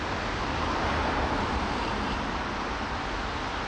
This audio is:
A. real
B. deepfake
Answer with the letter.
A